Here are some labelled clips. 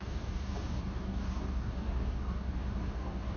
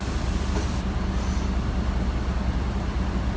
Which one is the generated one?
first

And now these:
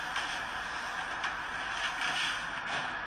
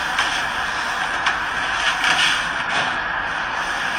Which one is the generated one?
second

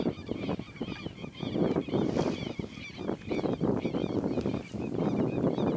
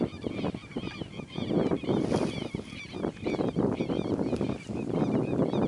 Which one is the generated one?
first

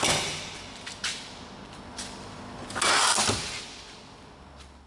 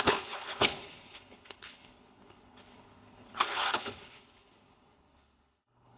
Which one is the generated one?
second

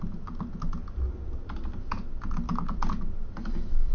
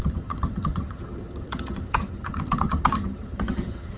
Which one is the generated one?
second